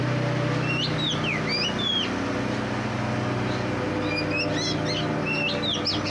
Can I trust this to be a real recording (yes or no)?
yes